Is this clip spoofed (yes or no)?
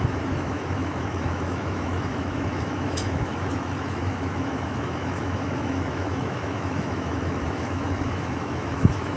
yes